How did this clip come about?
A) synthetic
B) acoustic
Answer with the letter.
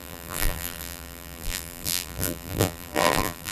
A